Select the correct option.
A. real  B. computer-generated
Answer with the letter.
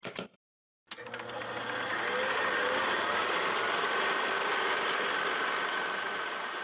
A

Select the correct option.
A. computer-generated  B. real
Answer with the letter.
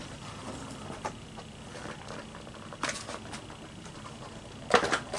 B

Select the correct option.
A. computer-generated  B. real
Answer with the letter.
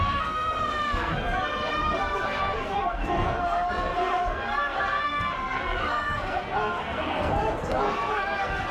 A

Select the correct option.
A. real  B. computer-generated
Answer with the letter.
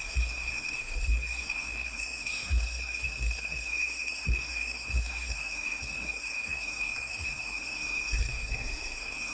B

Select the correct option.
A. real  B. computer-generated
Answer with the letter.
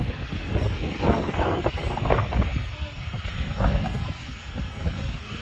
B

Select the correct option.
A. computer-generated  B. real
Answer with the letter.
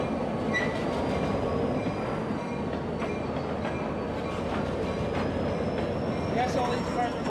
B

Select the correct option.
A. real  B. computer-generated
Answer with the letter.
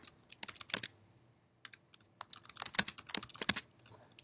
A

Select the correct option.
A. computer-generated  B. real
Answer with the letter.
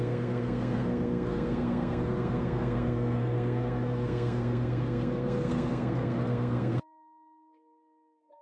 A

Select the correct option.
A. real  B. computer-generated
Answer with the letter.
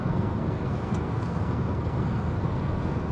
B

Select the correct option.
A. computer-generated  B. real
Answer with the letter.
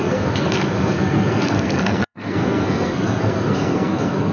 A